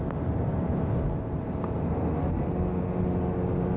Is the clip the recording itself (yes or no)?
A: yes